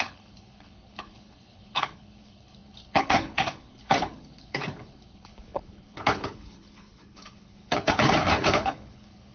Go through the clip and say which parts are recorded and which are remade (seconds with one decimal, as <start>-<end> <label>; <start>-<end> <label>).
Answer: 0.0-9.3 remade